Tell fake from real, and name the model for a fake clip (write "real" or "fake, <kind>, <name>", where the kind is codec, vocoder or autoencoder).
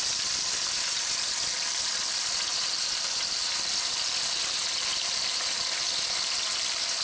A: real